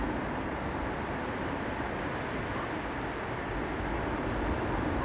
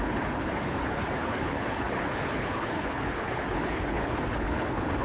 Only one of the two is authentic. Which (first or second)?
first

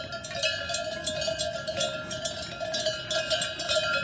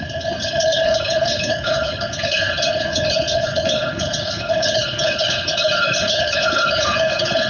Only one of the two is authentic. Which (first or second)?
first